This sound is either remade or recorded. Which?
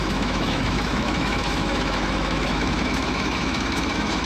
remade